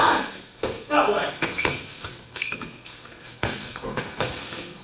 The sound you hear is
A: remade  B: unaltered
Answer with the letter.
A